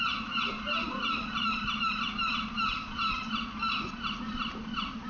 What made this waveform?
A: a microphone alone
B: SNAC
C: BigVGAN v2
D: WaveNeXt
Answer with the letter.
A